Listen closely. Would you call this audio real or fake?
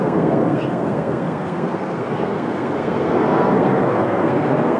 fake